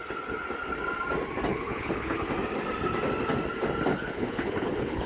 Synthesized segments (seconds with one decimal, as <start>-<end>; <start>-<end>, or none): 1.5-2.3; 3.9-5.1